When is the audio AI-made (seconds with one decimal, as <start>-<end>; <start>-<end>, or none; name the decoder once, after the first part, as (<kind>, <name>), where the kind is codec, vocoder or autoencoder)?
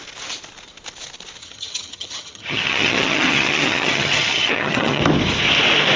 1.4-5.0 (vocoder, HiFi-GAN)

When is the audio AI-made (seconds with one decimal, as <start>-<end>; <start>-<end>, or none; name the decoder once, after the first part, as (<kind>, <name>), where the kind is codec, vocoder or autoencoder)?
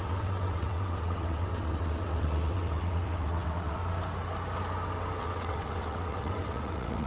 0.0-3.8 (vocoder, WaveNeXt); 5.2-7.1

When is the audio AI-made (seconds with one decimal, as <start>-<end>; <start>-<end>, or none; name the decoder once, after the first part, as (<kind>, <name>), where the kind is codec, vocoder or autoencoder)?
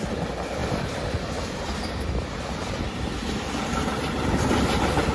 0.6-1.6 (vocoder, BigVGAN v2); 3.2-3.7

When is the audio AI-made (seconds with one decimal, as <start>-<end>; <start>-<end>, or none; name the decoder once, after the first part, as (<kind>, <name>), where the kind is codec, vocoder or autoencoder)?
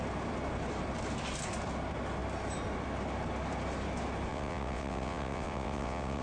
4.3-6.2 (vocoder, WaveNeXt)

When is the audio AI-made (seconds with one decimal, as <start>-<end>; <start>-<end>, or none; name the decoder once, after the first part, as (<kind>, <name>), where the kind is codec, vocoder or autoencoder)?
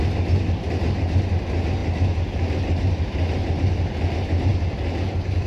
none